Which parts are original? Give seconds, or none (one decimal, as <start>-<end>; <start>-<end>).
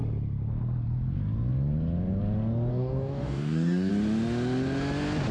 0.0-2.7; 3.9-5.3